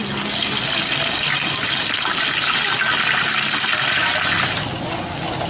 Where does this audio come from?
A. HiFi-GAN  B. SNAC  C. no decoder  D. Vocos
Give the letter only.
C